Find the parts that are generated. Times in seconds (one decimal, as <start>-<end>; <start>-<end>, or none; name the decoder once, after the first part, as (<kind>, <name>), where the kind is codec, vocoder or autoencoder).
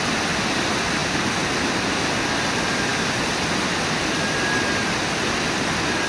none